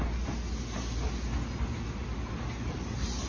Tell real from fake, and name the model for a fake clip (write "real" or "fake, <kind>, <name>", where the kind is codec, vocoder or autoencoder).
real